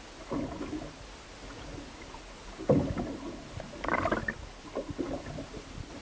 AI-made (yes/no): no